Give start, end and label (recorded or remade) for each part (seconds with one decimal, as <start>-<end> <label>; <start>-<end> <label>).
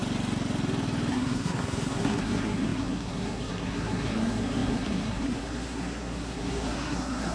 0.0-1.1 recorded; 1.1-7.3 remade